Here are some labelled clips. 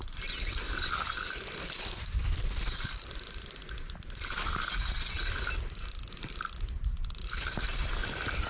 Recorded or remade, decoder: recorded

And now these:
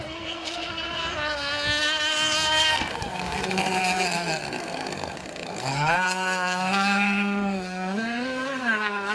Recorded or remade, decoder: remade, codec, SNAC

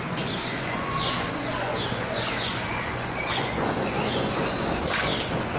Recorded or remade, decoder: remade, vocoder, Vocos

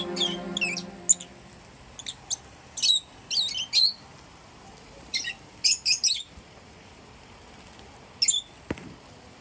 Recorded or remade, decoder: recorded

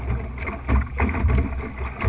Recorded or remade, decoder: recorded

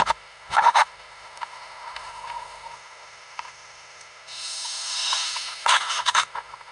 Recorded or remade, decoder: remade, autoencoder, DAC-VAE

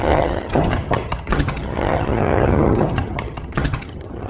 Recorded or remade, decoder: remade, vocoder, HiFi-GAN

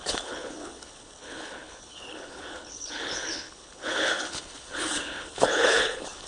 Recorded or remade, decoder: remade, codec, HILCodec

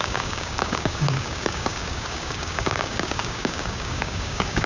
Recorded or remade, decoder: remade, codec, DAC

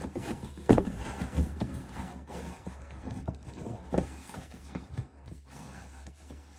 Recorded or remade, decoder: remade, codec, SNAC